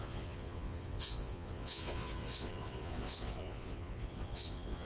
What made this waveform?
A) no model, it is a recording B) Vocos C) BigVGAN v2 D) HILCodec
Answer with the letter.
B